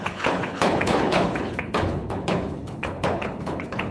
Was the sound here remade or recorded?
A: remade